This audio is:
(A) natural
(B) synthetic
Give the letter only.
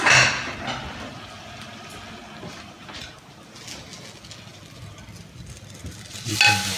A